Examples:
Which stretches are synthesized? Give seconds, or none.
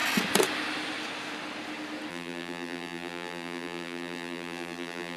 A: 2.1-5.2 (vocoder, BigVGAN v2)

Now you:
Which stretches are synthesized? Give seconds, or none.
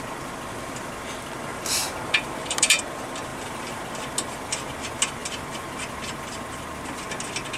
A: 1.5-2.8 (vocoder, BigVGAN v2); 3.3-3.8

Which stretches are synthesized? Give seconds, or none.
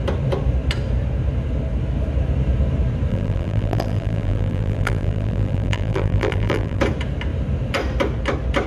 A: 3.1-6.8 (vocoder, BigVGAN v2)